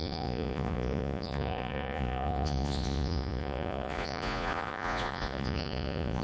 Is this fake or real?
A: fake